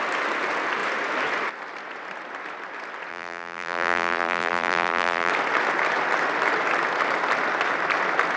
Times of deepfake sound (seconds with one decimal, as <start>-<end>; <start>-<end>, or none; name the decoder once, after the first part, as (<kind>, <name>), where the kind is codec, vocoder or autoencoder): 3.1-5.3 (vocoder, BigVGAN v2)